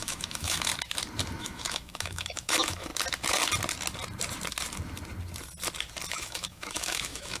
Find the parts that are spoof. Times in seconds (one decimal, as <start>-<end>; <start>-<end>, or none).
0.0-0.7; 1.4-2.9; 6.1-7.4